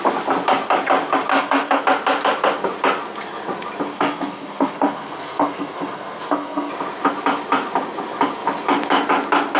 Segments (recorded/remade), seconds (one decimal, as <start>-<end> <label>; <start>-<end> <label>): 0.0-1.3 recorded; 1.3-1.8 remade; 1.8-3.9 recorded; 3.9-6.7 remade; 6.7-9.6 recorded